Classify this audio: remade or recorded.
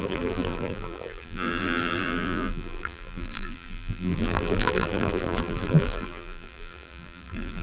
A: remade